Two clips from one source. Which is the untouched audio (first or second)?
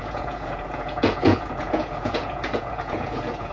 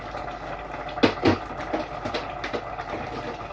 second